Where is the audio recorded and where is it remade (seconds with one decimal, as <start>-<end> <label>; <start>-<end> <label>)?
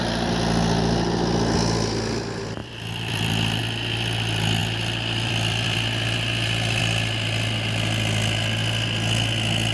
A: 0.0-2.6 recorded; 2.6-3.6 remade; 3.6-4.6 recorded; 4.6-6.8 remade; 6.8-9.7 recorded